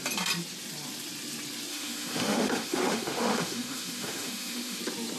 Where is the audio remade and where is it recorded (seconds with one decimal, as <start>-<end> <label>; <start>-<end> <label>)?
0.0-1.7 recorded; 1.7-4.8 remade; 4.8-5.2 recorded

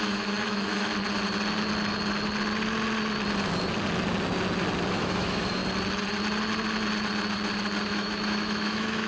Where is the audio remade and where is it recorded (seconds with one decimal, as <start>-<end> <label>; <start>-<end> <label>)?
0.0-0.9 remade; 0.9-4.9 recorded; 4.9-5.6 remade; 5.6-7.8 recorded; 7.8-9.1 remade

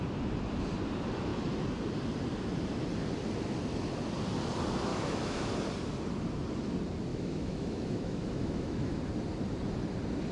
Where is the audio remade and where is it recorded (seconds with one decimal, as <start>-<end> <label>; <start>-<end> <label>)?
0.0-4.9 recorded; 4.9-5.5 remade; 5.5-7.1 recorded; 7.1-9.0 remade; 9.0-10.3 recorded

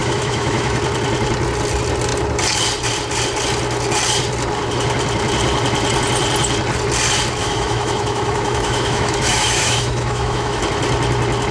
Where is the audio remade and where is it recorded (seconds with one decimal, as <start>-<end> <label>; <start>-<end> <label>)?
0.0-0.8 remade; 0.8-7.4 recorded; 7.4-10.6 remade; 10.6-11.5 recorded

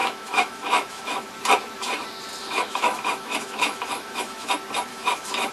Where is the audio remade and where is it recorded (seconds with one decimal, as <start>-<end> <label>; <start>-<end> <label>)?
0.0-1.3 remade; 1.3-2.4 recorded; 2.4-4.5 remade; 4.5-4.9 recorded; 4.9-5.5 remade

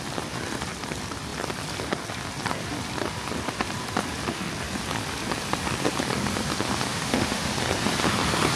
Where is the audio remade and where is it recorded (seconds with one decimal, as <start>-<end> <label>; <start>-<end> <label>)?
0.0-6.9 recorded; 6.9-7.5 remade; 7.5-8.6 recorded

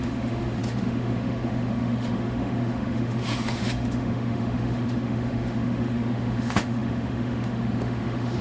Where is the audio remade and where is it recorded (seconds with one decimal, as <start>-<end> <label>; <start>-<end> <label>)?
0.0-8.4 remade

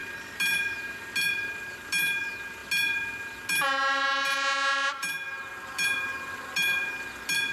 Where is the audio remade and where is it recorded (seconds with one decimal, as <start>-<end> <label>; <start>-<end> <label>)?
0.0-7.5 recorded